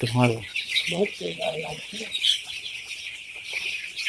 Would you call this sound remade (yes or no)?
yes